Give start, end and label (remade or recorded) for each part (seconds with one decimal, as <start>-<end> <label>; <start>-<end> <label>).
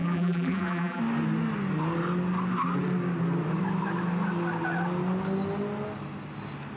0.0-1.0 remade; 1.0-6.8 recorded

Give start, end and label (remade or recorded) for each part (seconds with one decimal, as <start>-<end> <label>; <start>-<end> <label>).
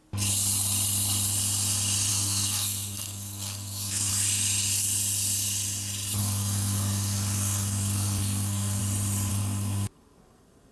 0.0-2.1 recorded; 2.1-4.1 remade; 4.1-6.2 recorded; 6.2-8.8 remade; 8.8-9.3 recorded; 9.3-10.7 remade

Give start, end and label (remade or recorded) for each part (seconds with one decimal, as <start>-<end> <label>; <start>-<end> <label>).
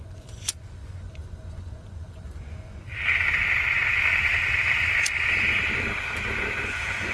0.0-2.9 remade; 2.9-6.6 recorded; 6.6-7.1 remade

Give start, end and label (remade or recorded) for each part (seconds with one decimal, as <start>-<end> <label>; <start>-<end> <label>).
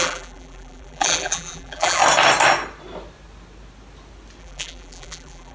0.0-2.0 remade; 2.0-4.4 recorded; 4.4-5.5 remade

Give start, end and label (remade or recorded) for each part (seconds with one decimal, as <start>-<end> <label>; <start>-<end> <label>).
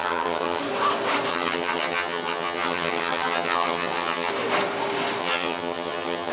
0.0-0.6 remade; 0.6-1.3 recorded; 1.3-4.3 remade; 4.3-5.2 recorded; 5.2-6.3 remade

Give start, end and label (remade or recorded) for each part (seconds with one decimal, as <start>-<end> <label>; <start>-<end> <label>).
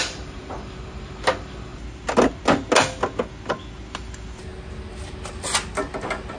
0.0-6.4 recorded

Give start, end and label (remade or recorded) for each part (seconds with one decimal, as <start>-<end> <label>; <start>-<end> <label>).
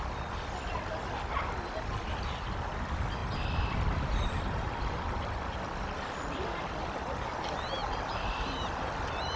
0.0-3.2 recorded; 3.2-7.7 remade; 7.7-9.4 recorded